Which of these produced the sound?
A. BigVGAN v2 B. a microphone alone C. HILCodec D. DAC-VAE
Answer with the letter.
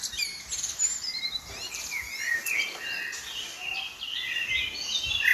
B